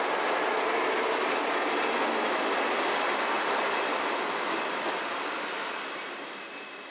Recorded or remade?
recorded